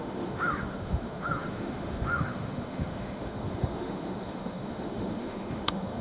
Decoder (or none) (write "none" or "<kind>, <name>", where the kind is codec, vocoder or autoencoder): autoencoder, DAC-VAE